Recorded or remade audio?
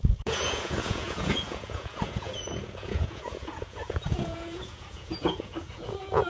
remade